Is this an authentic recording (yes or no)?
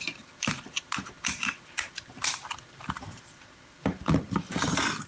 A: no